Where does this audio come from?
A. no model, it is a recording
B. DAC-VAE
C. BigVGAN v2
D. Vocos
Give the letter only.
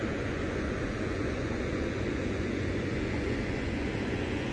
D